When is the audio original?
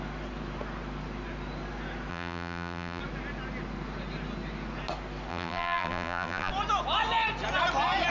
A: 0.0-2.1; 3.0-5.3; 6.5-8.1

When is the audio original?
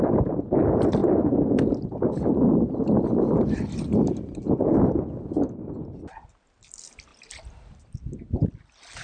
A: 0.0-1.0; 4.9-9.0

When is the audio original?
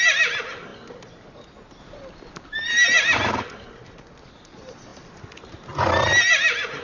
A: 0.0-6.8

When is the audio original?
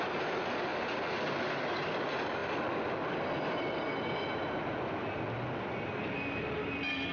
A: 0.0-0.7; 2.0-2.4; 3.9-7.1